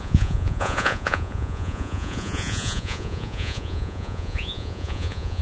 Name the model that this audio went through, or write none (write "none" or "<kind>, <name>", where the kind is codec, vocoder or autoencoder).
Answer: vocoder, Vocos